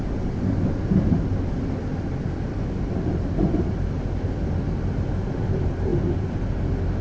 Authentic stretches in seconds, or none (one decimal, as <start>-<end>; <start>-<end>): 0.0-7.0